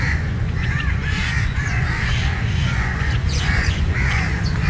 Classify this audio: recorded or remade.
remade